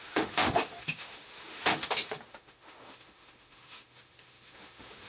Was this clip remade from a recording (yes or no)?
yes